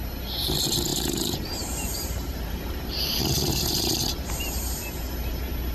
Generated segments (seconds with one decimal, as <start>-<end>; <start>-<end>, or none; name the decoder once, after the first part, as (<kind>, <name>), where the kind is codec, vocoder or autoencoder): 0.9-4.3 (vocoder, BigVGAN v2)